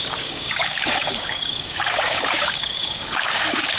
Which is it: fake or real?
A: fake